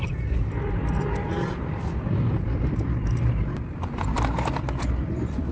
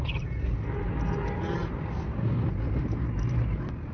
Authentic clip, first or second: second